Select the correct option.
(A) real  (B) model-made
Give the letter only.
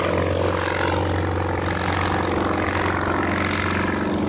A